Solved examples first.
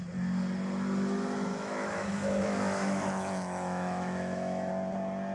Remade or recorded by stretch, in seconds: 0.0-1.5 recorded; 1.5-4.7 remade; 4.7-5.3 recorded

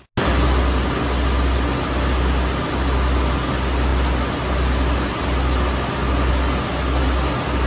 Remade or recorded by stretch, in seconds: 0.0-7.7 recorded

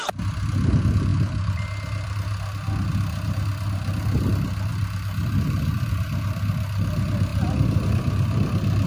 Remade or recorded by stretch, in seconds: 0.0-4.7 recorded; 4.7-5.9 remade; 5.9-7.3 recorded; 7.3-8.9 remade

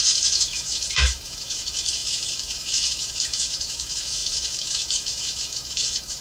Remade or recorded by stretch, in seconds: 0.0-6.2 remade

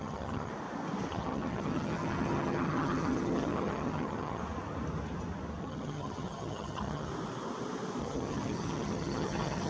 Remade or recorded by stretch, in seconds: 0.0-0.5 remade; 0.5-1.1 recorded; 1.1-4.4 remade; 4.4-5.6 recorded; 5.6-7.1 remade; 7.1-8.0 recorded; 8.0-9.7 remade